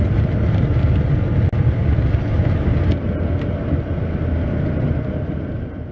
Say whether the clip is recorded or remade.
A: recorded